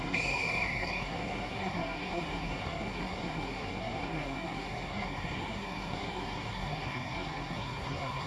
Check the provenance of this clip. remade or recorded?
remade